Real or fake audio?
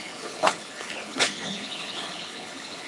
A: fake